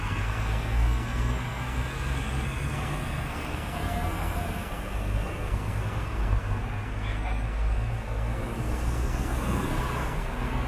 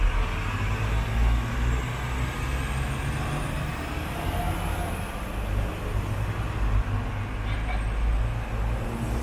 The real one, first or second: second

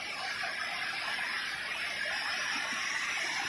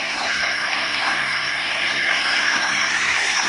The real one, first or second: first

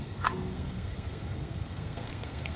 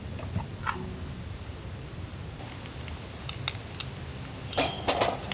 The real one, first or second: second